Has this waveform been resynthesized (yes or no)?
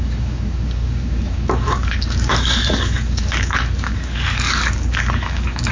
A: yes